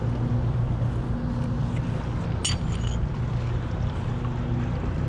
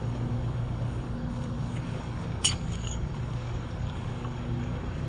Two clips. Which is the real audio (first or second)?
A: first